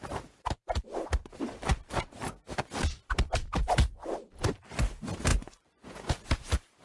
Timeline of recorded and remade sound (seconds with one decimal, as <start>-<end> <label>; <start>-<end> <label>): 0.0-5.3 recorded; 5.3-6.1 remade; 6.1-6.8 recorded